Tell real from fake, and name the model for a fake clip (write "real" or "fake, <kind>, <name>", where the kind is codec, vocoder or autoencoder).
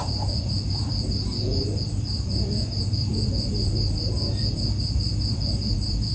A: fake, vocoder, BigVGAN v2